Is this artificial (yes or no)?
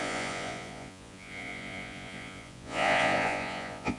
yes